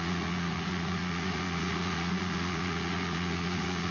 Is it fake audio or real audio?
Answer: fake